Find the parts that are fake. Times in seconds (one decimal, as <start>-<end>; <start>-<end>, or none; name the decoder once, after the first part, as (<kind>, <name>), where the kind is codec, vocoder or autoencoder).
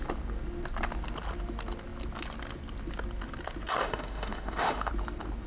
3.8-4.9 (autoencoder, DAC-VAE)